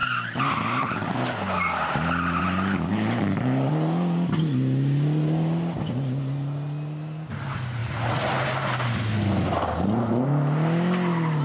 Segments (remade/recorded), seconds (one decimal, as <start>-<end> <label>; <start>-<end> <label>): 0.0-2.9 recorded; 2.9-3.7 remade; 3.7-7.8 recorded; 7.8-8.4 remade; 8.4-11.4 recorded